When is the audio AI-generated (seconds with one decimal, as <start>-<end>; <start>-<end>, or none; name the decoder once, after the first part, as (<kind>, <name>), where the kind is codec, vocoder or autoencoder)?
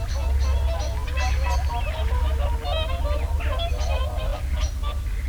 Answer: none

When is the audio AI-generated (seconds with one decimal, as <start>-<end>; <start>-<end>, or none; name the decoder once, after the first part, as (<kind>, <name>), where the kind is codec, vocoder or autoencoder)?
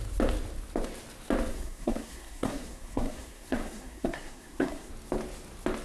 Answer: 1.5-4.9 (codec, SNAC)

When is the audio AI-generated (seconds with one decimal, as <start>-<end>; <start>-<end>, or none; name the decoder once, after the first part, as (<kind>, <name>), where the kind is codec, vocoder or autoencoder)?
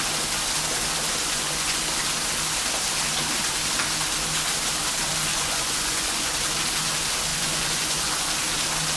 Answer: 1.2-1.8 (vocoder, Vocos); 5.3-6.3; 7.3-8.3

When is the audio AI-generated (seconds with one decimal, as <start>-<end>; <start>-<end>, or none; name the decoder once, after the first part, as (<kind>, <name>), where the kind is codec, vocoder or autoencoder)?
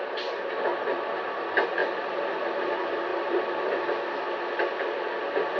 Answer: 3.1-3.8 (vocoder, BigVGAN v2)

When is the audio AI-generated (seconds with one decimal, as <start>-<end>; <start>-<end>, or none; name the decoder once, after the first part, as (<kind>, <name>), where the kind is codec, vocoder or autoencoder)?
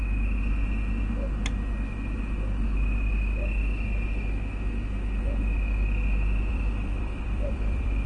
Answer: 6.5-8.1 (vocoder, BigVGAN v2)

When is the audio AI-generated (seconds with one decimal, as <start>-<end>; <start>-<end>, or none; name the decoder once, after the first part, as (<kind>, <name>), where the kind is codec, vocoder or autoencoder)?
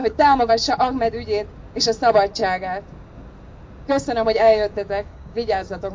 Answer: 0.0-0.5 (codec, DAC); 4.4-5.9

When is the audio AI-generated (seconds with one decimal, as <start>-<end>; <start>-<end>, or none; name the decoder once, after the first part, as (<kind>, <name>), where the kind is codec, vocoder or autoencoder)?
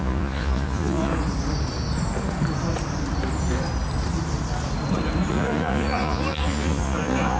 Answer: 0.0-1.1 (vocoder, Vocos); 5.3-7.4